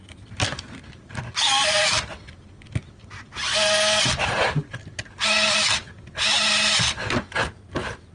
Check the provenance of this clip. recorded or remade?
recorded